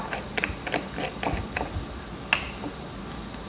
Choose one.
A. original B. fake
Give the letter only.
A